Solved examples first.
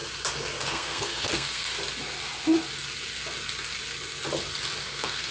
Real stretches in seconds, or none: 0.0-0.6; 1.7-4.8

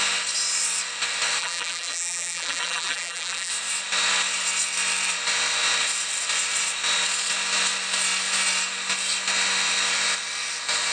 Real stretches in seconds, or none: 0.0-1.4; 3.5-10.9

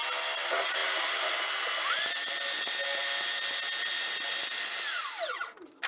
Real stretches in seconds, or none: 0.0-5.9

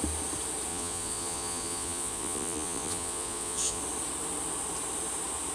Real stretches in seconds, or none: 0.0-0.7; 3.8-5.5

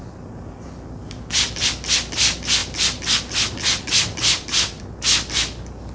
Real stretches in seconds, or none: 0.0-5.9